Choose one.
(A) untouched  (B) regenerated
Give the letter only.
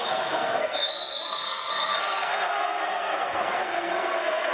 B